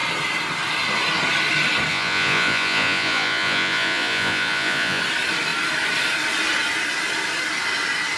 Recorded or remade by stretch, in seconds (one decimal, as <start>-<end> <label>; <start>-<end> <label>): 0.0-1.9 recorded; 1.9-5.0 remade; 5.0-8.2 recorded

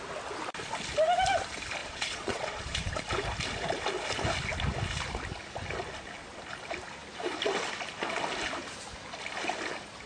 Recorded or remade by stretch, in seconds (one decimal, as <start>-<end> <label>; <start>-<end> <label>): 0.0-1.8 recorded; 1.8-3.0 remade; 3.0-10.1 recorded

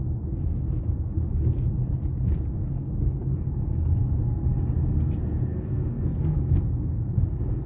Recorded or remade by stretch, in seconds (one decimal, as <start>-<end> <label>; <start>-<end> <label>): 0.0-5.5 recorded; 5.5-7.0 remade; 7.0-7.7 recorded

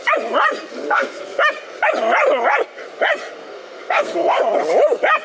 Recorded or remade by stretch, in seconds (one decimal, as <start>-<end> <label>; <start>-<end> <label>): 0.0-0.7 recorded; 0.7-1.4 remade; 1.4-3.4 recorded; 3.4-4.4 remade; 4.4-5.2 recorded

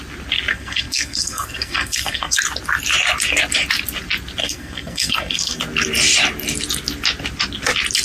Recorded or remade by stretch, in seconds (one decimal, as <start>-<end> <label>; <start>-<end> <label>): 0.0-0.5 recorded; 0.5-2.4 remade; 2.4-4.4 recorded; 4.4-5.6 remade; 5.6-8.0 recorded